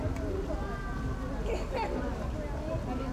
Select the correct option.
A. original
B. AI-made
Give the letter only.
A